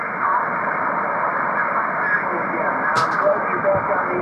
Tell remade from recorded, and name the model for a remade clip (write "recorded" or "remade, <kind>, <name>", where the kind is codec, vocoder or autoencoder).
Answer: recorded